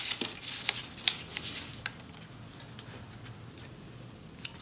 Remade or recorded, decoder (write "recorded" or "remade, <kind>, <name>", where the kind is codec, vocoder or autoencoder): recorded